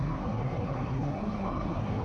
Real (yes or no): no